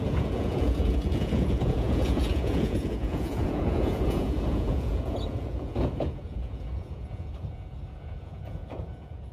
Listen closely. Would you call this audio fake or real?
fake